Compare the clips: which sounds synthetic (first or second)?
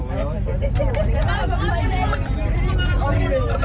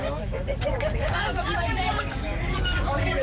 second